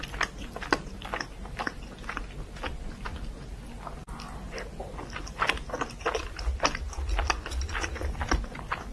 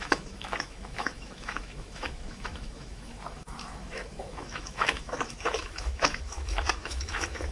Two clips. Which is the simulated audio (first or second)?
second